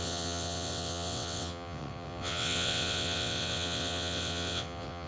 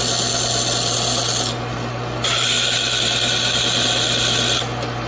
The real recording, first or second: second